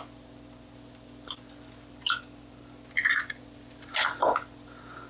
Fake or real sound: real